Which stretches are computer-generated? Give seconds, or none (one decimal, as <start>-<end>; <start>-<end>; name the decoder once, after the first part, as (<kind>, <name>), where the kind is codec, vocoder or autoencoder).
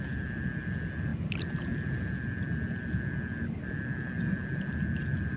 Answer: none